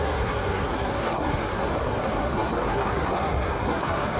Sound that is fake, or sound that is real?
fake